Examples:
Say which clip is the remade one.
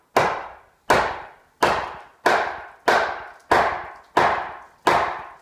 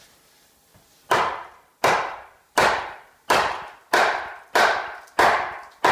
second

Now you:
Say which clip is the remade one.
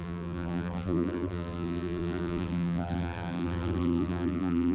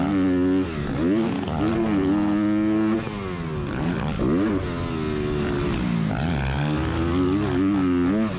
first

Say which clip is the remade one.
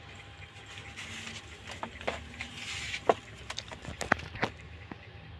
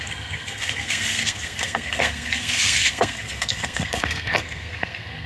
second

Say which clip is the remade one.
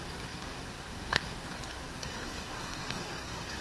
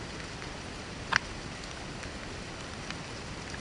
first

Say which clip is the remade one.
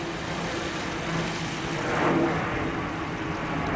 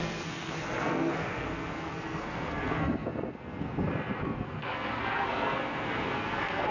second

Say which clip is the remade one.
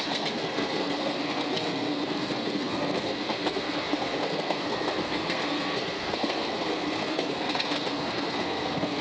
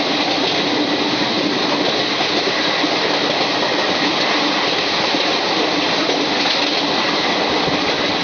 first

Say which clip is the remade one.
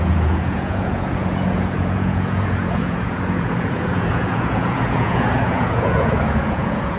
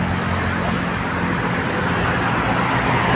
first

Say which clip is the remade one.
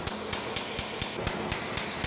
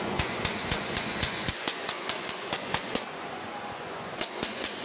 second